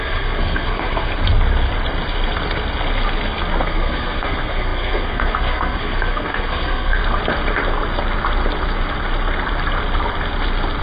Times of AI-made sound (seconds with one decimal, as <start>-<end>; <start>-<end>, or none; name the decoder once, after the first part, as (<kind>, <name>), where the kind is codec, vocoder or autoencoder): 0.0-1.1 (codec, SNAC); 3.6-7.0